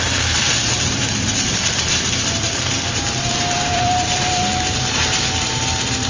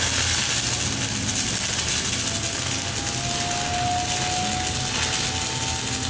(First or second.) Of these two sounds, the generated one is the first